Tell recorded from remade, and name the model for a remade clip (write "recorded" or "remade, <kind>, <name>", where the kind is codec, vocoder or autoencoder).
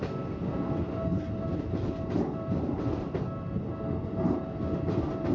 recorded